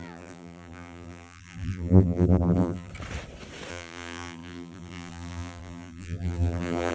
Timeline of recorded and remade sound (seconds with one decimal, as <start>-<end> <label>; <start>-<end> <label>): 0.0-2.9 remade; 2.9-3.7 recorded; 3.7-6.9 remade